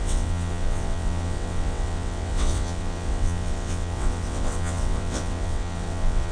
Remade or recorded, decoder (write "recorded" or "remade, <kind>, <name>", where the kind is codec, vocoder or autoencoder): remade, vocoder, WaveNeXt